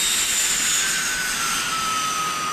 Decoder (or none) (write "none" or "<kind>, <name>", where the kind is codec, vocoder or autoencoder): none